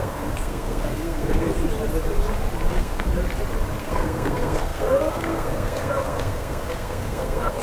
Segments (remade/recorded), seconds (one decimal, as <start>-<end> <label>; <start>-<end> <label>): 0.0-1.6 remade; 1.6-2.7 recorded; 2.7-3.1 remade; 3.1-3.8 recorded; 3.8-7.6 remade